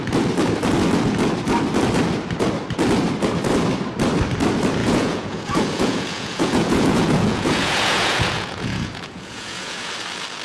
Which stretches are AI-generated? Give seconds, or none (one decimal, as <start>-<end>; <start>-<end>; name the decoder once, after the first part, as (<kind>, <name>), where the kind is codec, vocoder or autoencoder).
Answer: 4.8-9.9 (vocoder, Vocos)